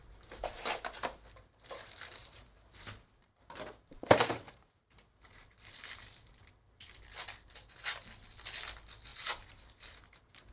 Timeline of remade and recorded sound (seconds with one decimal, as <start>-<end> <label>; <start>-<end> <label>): 0.0-2.2 recorded; 2.2-6.3 remade; 6.3-9.1 recorded; 9.1-10.5 remade